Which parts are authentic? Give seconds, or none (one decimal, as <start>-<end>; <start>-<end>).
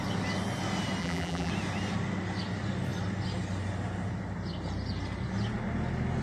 0.0-1.0; 1.5-6.2